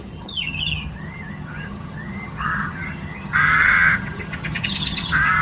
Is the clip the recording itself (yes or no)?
no